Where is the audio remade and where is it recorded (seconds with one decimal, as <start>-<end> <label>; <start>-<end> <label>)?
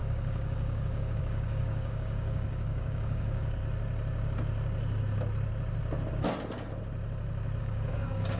0.0-3.6 remade; 3.6-7.6 recorded; 7.6-8.4 remade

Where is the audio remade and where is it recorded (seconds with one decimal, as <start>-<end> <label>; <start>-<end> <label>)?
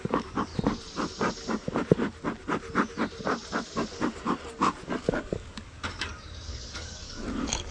0.0-0.5 remade; 0.5-5.1 recorded; 5.1-7.7 remade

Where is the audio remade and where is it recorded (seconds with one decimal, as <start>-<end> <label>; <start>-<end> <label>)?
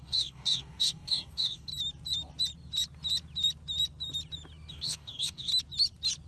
0.0-1.7 remade; 1.7-4.7 recorded; 4.7-5.5 remade; 5.5-6.3 recorded